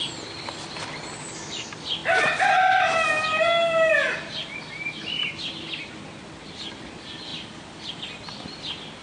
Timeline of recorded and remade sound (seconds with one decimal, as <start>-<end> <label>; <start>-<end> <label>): 0.0-9.0 recorded

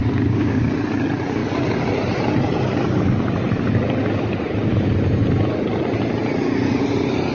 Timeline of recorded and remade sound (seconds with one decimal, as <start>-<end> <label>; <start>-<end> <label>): 0.0-0.7 remade; 0.7-7.3 recorded

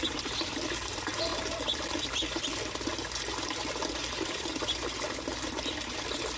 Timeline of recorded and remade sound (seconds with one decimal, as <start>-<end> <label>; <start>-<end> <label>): 0.0-6.4 recorded

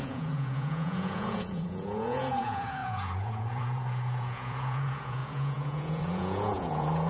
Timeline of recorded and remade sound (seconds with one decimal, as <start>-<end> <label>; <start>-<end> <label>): 0.0-7.1 remade